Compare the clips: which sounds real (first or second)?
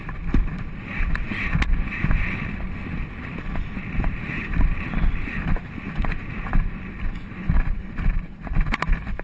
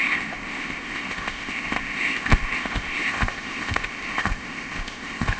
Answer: first